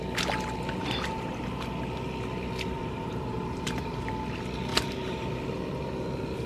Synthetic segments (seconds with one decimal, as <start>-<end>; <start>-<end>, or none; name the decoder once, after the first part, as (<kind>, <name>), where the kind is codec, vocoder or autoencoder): 2.8-4.1 (vocoder, BigVGAN v2); 4.7-5.3